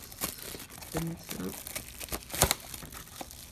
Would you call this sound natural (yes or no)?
yes